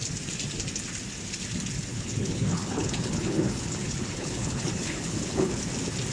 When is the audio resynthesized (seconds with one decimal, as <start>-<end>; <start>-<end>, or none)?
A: 1.9-5.6